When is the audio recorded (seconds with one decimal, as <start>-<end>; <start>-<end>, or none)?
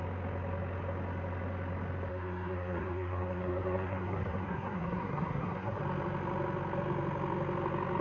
0.0-2.1; 5.8-8.0